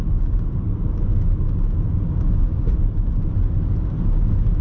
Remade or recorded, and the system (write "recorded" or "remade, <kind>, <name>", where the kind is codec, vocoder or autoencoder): recorded